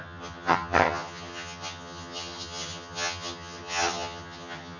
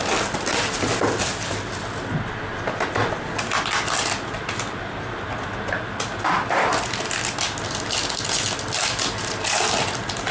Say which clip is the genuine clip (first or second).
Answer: second